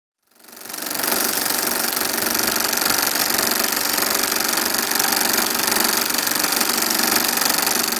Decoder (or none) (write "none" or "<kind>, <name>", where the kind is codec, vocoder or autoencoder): none